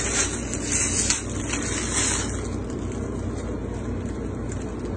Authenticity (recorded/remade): recorded